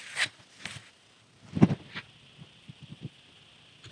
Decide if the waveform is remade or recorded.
recorded